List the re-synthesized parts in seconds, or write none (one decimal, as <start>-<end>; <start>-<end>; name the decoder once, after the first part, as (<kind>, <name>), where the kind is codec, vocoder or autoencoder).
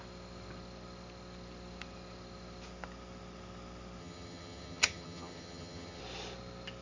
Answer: 4.0-6.0 (vocoder, HiFi-GAN)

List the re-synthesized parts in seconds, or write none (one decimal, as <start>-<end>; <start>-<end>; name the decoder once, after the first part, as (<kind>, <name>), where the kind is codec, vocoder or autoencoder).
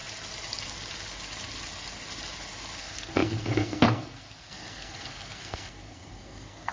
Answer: 2.8-6.7 (codec, SNAC)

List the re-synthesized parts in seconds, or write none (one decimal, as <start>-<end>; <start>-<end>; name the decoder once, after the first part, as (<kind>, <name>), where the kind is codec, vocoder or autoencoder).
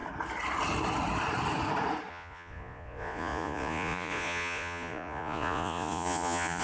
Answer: 2.1-6.6 (vocoder, Vocos)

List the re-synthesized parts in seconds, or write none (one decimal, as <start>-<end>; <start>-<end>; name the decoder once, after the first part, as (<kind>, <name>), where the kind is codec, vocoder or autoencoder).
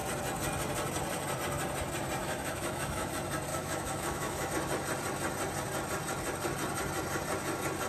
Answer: 2.2-3.1 (autoencoder, DAC-VAE); 3.5-4.5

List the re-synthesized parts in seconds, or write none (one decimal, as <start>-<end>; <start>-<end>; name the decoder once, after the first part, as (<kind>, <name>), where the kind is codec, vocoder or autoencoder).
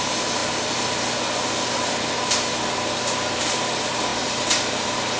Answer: 0.0-4.1 (vocoder, BigVGAN v2); 4.6-5.2